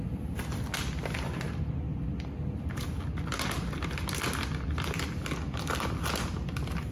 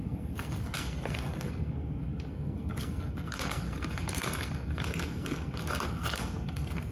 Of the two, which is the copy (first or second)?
second